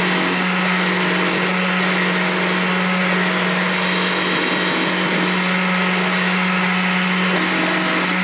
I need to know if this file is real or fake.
real